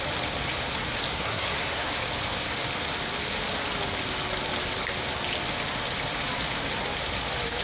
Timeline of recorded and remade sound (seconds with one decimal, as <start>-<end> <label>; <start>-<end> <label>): 0.0-1.1 recorded; 1.1-1.9 remade; 1.9-7.6 recorded